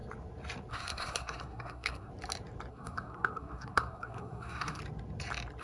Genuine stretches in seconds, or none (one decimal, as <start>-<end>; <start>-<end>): 0.0-0.7; 2.1-2.7; 4.8-5.6